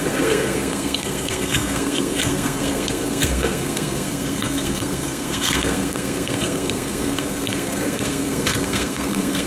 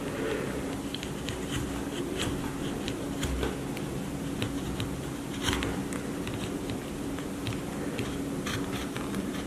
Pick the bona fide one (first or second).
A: second